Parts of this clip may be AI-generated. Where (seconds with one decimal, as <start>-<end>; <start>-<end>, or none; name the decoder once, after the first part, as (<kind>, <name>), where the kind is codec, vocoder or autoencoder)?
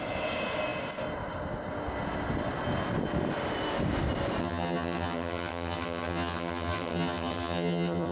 4.4-8.1 (vocoder, HiFi-GAN)